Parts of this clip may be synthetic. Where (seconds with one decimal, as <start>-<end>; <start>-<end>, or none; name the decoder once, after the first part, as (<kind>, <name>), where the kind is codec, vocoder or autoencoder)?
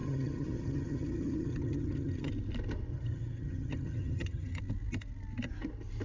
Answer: 0.0-2.3 (vocoder, HiFi-GAN); 2.9-4.6